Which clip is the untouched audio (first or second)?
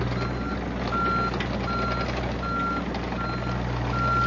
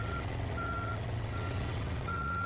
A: first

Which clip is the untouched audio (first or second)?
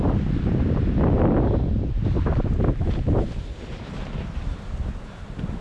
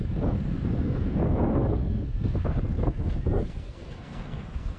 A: first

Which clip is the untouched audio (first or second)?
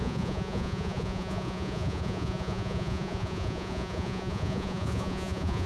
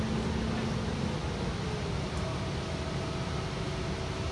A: second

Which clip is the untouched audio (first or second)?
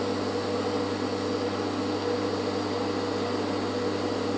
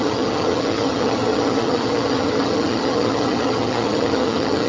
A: first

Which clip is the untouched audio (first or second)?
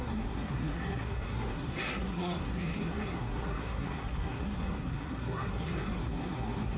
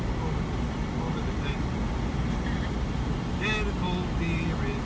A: second